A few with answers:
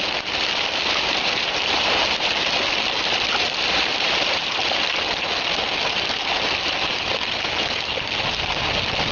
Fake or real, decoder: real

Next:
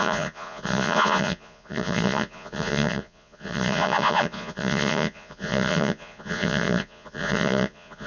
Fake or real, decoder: fake, vocoder, Vocos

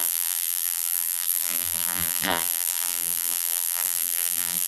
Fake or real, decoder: fake, vocoder, BigVGAN v2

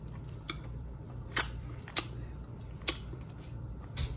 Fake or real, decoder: fake, vocoder, BigVGAN v2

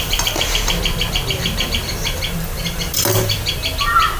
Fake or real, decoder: real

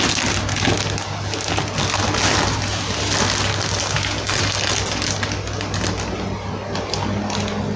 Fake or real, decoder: real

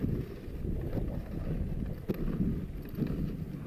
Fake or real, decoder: real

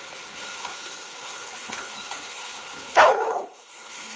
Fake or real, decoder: fake, codec, HILCodec